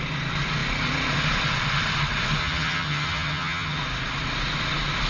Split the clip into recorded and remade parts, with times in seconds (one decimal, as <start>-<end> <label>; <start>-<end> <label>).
0.0-2.4 recorded; 2.4-3.8 remade; 3.8-5.1 recorded